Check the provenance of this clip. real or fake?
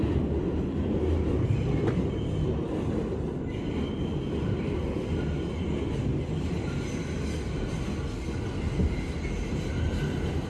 real